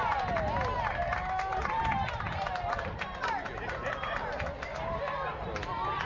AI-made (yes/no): no